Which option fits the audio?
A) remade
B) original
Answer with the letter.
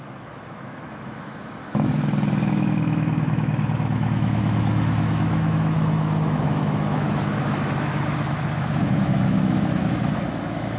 A